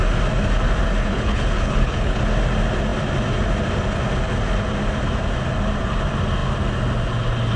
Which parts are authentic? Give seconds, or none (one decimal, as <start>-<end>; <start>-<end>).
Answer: 0.0-1.0; 2.2-7.6